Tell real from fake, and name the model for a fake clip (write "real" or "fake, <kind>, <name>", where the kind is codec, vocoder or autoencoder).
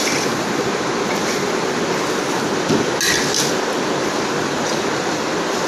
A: real